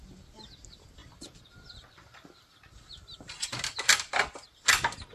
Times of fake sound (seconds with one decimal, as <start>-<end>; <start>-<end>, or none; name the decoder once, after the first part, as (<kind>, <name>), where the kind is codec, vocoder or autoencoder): none